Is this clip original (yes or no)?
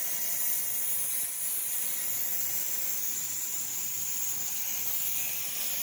yes